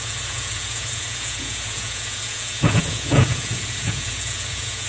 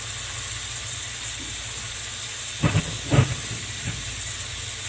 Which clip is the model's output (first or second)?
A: first